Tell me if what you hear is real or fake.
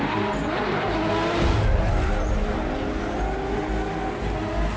real